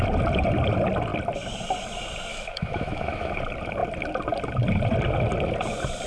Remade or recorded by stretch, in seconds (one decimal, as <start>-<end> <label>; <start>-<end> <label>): 0.0-2.3 recorded; 2.3-3.4 remade; 3.4-6.1 recorded